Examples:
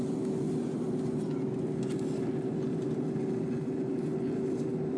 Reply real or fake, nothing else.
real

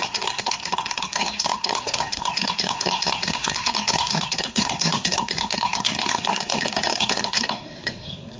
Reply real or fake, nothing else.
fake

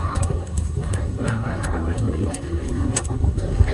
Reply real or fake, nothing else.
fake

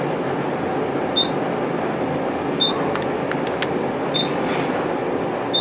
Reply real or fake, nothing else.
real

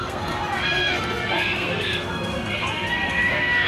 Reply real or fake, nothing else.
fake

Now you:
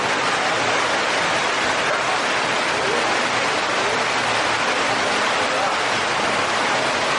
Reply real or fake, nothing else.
real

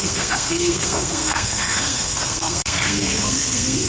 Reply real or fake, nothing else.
fake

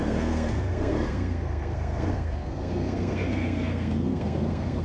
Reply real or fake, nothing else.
fake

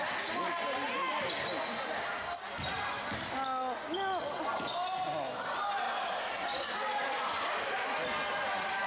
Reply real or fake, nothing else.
real